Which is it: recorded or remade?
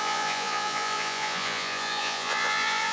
remade